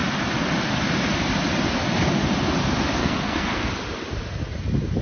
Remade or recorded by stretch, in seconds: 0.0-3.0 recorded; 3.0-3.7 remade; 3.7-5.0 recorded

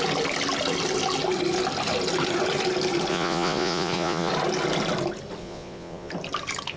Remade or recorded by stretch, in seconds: 0.0-3.1 recorded; 3.1-4.3 remade; 4.3-5.4 recorded; 5.4-6.1 remade; 6.1-6.8 recorded

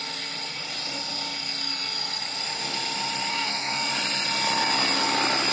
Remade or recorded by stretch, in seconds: 0.0-3.3 recorded; 3.3-3.9 remade; 3.9-5.5 recorded

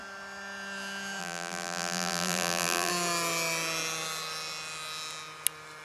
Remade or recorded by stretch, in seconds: 0.0-1.2 recorded; 1.2-2.9 remade; 2.9-5.8 recorded

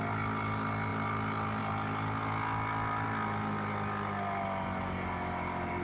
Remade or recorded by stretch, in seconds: 0.0-5.8 recorded